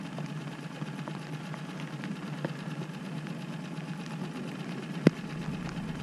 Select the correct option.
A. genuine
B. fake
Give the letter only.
A